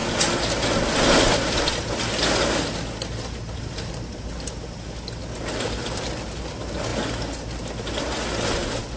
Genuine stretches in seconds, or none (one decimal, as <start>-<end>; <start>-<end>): 0.0-9.0